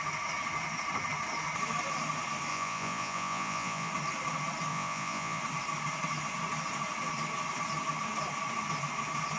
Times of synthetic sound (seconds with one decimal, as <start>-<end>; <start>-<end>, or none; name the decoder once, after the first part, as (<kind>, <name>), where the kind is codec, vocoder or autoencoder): 2.5-3.9 (vocoder, Vocos); 4.7-5.4